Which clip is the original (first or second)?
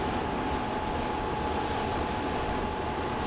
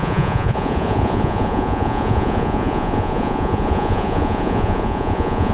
first